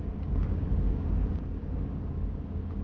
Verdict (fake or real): fake